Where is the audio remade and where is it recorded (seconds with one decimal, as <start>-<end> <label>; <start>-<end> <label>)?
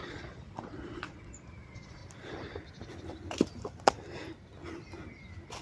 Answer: 0.0-2.0 remade; 2.0-5.6 recorded